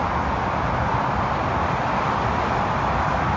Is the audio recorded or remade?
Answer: recorded